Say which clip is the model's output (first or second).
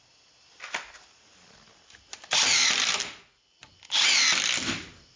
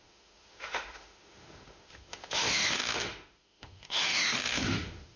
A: second